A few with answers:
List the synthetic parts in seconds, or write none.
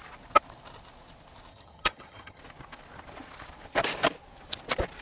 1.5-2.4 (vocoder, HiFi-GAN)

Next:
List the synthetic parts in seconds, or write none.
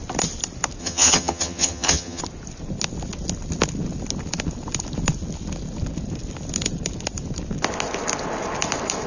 0.8-2.2 (vocoder, HiFi-GAN)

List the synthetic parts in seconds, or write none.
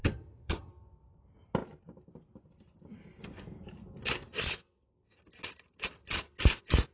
0.0-0.7 (vocoder, HiFi-GAN)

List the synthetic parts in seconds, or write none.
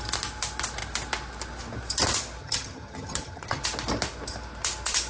2.4-3.6 (vocoder, HiFi-GAN)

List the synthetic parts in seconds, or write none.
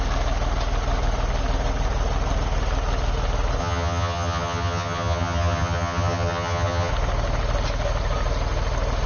3.6-6.9 (vocoder, HiFi-GAN)